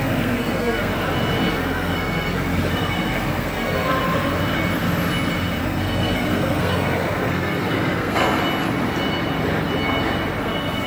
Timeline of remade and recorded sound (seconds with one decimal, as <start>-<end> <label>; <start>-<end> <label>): 0.0-0.9 remade; 0.9-1.5 recorded; 1.5-4.0 remade; 4.0-5.6 recorded; 5.6-8.4 remade; 8.4-10.4 recorded; 10.4-10.9 remade